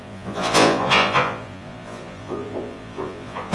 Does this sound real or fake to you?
fake